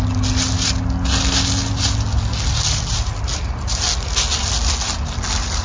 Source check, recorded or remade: recorded